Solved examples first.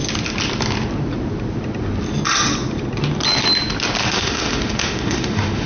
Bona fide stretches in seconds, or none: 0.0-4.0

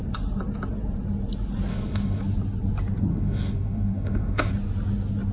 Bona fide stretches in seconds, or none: 0.0-1.7; 2.2-3.1; 4.5-5.3

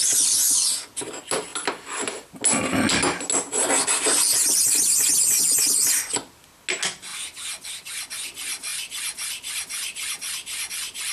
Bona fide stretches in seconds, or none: 0.0-11.1

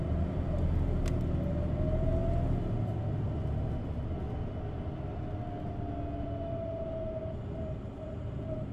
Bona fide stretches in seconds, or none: 0.0-8.7

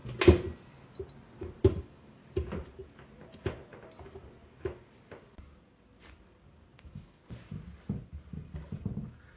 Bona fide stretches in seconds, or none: 0.0-1.8; 2.2-6.8; 7.2-9.4

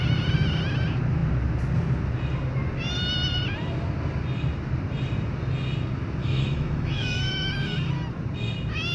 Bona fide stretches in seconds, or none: 0.0-6.2; 7.5-8.9

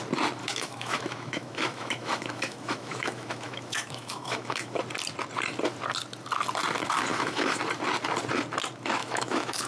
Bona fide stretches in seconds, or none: 0.0-0.4; 4.8-7.1; 7.6-9.0

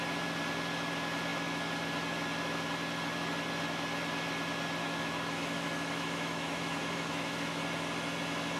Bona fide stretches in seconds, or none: 0.0-4.8; 7.6-8.6